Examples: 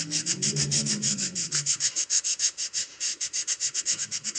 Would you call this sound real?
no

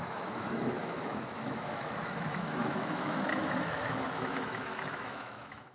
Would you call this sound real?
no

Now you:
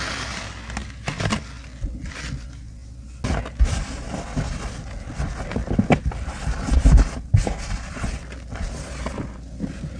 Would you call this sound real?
yes